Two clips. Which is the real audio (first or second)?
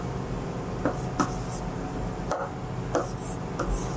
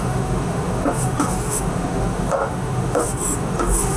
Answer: first